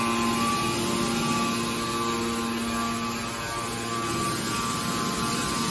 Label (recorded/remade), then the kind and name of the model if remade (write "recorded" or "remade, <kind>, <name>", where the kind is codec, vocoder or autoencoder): recorded